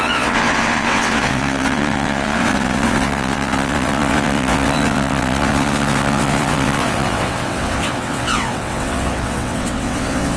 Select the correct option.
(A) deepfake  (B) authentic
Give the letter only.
A